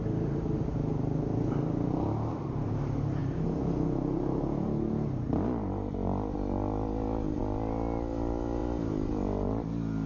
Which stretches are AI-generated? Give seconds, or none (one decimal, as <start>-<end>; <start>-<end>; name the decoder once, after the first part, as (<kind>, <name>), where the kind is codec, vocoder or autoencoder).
none